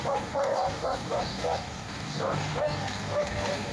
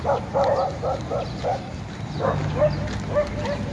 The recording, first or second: second